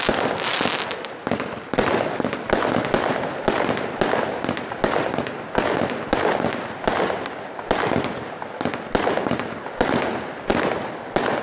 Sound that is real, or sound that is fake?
real